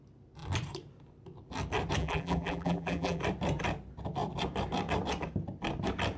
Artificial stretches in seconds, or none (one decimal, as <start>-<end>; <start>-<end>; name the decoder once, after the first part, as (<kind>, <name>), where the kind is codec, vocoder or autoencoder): 2.0-3.2 (vocoder, BigVGAN v2)